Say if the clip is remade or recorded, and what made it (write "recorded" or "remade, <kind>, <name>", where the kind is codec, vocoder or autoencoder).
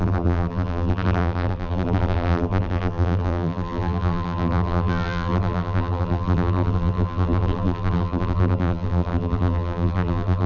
remade, vocoder, BigVGAN v2